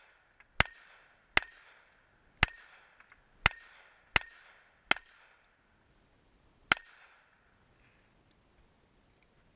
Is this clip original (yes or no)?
yes